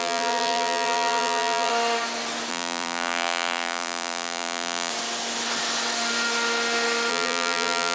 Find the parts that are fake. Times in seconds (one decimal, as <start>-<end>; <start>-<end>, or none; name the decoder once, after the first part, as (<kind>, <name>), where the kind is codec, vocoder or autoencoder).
0.0-1.7 (vocoder, BigVGAN v2); 2.5-4.9; 7.1-7.9